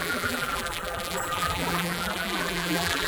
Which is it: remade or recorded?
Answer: remade